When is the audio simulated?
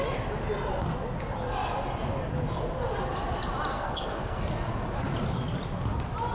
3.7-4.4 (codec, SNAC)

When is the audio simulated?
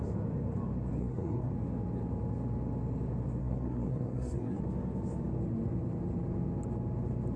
1.0-1.5 (codec, SNAC); 3.4-4.6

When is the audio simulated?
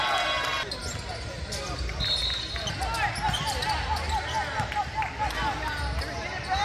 none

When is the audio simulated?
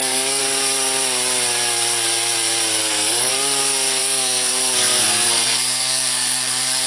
0.0-0.4 (codec, SNAC); 2.8-3.3; 4.0-6.9